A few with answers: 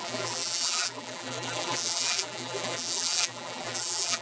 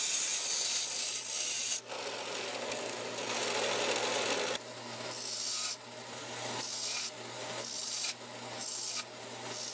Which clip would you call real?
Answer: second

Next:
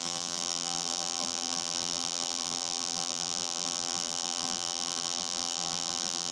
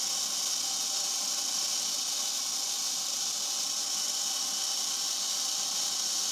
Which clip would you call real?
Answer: second